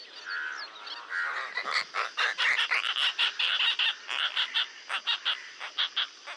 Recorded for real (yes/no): yes